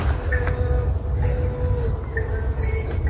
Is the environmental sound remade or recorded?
recorded